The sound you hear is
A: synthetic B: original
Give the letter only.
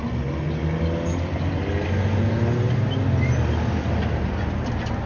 B